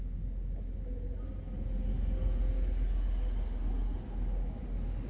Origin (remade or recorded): recorded